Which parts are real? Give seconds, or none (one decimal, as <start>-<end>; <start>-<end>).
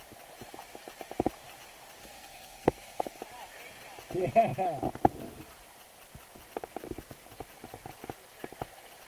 0.0-2.0; 3.2-9.1